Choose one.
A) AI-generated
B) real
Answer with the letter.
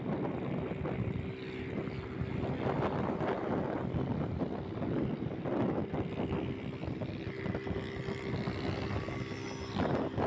B